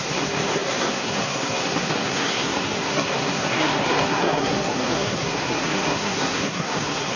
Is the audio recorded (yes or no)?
no